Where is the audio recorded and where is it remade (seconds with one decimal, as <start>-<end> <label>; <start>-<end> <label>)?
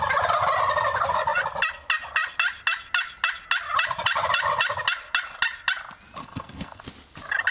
0.0-6.2 recorded; 6.2-6.8 remade; 6.8-7.5 recorded